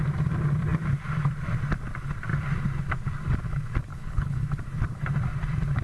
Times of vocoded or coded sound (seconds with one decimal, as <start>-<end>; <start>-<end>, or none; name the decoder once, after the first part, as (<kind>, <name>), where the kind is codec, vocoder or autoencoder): 3.9-4.4 (codec, HILCodec)